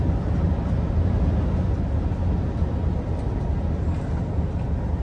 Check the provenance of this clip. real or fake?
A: real